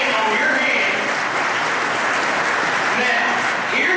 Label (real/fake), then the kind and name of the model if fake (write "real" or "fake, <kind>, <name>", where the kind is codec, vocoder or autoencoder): real